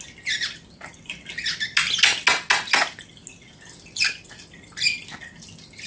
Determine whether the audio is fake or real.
real